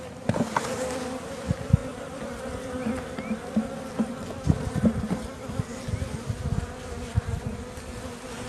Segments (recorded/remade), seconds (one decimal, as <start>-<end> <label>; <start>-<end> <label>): 0.0-8.5 recorded

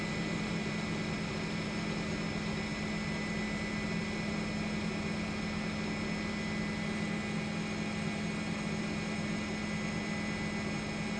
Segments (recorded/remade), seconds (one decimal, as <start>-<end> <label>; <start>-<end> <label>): 0.0-11.2 recorded

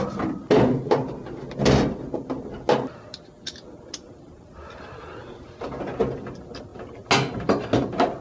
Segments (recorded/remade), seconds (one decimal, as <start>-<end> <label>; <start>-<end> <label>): 0.0-8.2 recorded

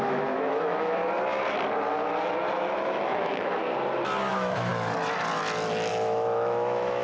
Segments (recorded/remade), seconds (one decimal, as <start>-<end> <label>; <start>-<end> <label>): 0.0-1.0 remade; 1.0-2.5 recorded; 2.5-3.6 remade; 3.6-4.3 recorded; 4.3-4.7 remade; 4.7-5.9 recorded; 5.9-7.0 remade

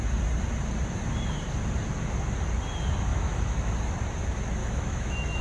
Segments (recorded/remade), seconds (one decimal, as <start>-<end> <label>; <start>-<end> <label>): 0.0-3.1 recorded; 3.1-3.7 remade; 3.7-4.6 recorded; 4.6-5.4 remade

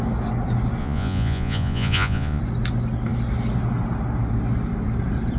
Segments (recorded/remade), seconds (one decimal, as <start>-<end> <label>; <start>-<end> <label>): 0.0-0.8 recorded; 0.8-2.4 remade; 2.4-5.4 recorded

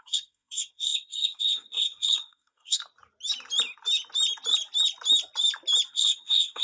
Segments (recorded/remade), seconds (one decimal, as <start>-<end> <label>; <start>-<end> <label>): 0.0-2.8 remade; 2.8-5.9 recorded; 5.9-6.6 remade

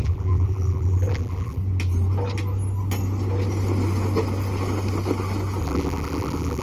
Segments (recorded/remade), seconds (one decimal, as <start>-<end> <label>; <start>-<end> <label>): 0.0-1.6 remade; 1.6-5.6 recorded; 5.6-6.6 remade